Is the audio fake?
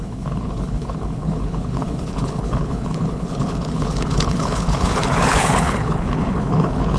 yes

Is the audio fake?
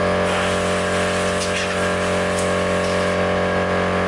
no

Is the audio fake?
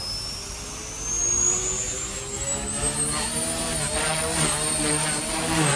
no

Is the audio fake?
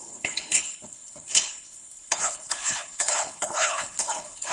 yes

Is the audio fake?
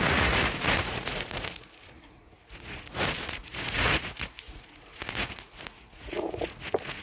yes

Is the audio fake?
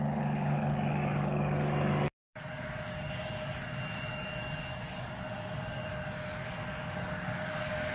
yes